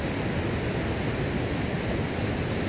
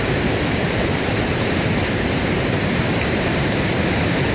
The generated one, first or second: second